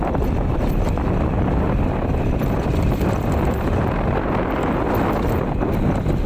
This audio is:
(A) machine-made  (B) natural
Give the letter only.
B